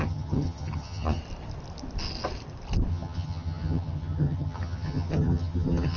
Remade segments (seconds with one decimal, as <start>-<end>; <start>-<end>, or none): 0.0-1.2; 2.9-6.0